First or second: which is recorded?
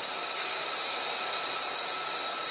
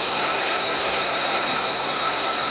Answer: first